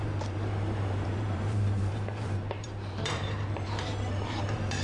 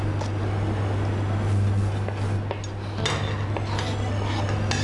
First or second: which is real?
second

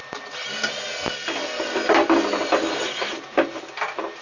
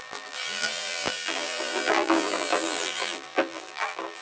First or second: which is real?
first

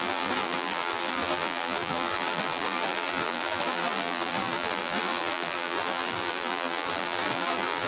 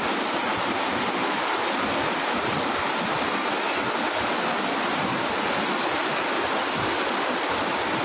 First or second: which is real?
second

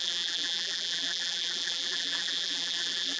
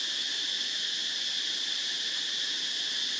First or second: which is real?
second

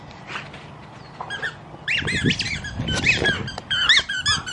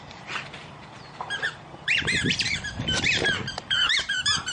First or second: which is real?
first